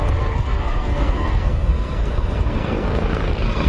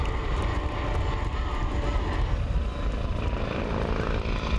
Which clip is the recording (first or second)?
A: second